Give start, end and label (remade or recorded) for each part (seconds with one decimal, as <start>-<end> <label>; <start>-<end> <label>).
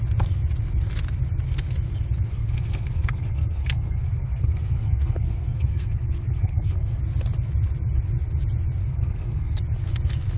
0.0-2.3 recorded; 2.3-7.0 remade; 7.0-8.9 recorded; 8.9-9.6 remade; 9.6-10.4 recorded